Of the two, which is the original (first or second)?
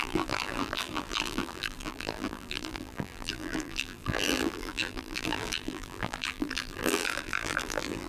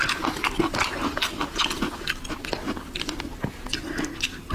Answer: second